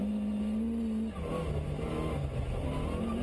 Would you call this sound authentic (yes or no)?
yes